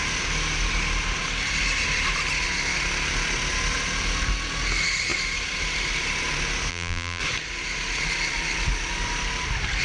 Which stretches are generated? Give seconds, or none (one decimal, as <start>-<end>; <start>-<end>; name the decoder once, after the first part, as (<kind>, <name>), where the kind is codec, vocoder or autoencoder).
6.7-7.2 (vocoder, BigVGAN v2)

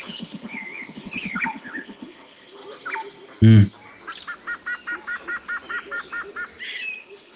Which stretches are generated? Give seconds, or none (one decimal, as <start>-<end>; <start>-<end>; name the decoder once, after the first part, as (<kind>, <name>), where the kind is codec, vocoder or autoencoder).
0.0-2.6 (codec, HILCodec); 7.0-7.4

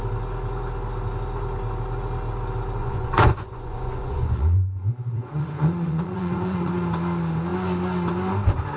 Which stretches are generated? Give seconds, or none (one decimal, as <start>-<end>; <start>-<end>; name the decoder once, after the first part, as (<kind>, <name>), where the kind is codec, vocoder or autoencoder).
2.8-6.7 (vocoder, Vocos)

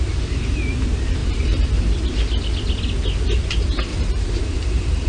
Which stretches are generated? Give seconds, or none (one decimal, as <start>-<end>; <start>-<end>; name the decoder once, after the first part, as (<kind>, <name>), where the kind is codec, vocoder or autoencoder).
1.2-1.7 (vocoder, BigVGAN v2); 3.9-5.1

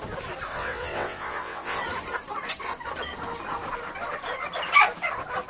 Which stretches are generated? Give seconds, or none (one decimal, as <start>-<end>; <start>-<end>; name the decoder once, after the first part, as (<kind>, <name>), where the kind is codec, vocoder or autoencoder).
0.5-1.8 (vocoder, WaveNeXt)